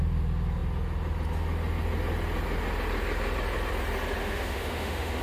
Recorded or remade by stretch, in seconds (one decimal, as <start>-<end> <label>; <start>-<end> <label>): 0.0-4.2 recorded; 4.2-5.2 remade